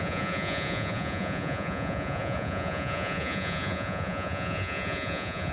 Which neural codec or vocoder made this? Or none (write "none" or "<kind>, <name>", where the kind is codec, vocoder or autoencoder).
vocoder, Vocos